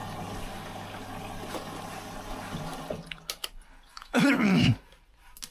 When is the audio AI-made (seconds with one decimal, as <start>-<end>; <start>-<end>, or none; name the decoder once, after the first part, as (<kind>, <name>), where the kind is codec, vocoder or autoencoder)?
3.9-4.7 (autoencoder, DAC-VAE)